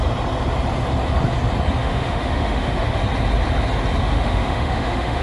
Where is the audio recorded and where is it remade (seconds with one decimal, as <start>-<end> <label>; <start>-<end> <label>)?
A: 0.0-1.8 recorded; 1.8-3.0 remade; 3.0-4.0 recorded; 4.0-5.2 remade